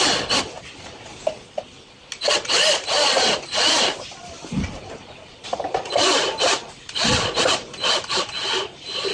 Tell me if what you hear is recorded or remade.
recorded